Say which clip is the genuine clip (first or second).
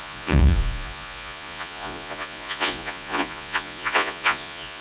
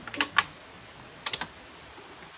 second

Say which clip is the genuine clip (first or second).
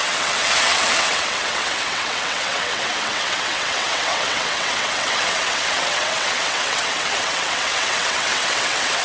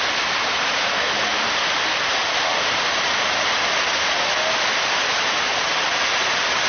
second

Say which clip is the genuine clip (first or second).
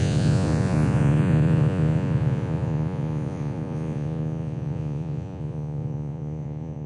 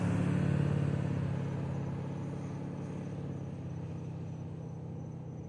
second